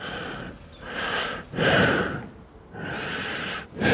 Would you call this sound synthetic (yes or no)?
no